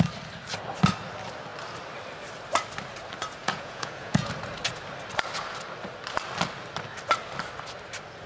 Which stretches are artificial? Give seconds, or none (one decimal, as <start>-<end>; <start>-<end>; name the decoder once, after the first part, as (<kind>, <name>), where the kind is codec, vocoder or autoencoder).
3.4-4.3 (vocoder, Vocos)